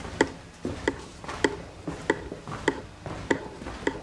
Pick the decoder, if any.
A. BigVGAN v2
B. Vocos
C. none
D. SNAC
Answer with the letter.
C